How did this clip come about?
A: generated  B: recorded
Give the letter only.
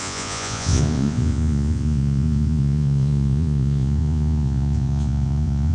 A